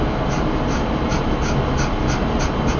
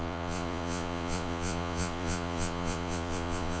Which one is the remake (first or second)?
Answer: second